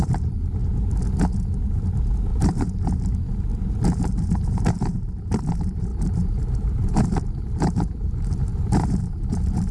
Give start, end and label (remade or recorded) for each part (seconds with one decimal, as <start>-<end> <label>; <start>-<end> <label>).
0.0-0.6 remade; 0.6-1.6 recorded; 1.6-9.7 remade